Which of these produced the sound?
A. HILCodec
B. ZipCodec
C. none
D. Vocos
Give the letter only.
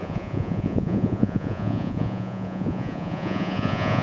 D